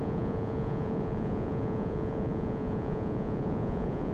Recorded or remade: remade